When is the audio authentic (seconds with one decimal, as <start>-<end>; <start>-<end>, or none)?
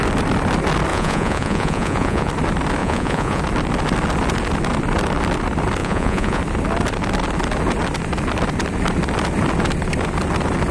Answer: 0.0-0.9; 2.3-2.8; 3.4-5.8; 6.4-10.7